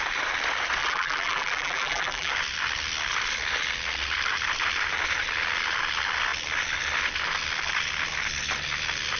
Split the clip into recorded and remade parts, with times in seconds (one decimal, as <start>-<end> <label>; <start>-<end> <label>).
0.0-0.8 recorded; 0.8-2.3 remade; 2.3-9.2 recorded